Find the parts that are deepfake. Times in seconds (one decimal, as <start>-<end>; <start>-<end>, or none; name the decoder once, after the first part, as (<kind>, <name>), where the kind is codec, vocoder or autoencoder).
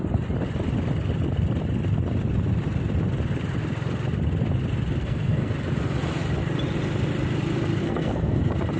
5.0-5.5 (codec, SNAC); 7.8-8.4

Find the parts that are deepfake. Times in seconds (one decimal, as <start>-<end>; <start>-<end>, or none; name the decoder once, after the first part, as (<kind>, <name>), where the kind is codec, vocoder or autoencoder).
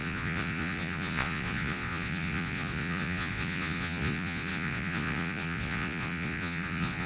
0.0-7.1 (vocoder, Vocos)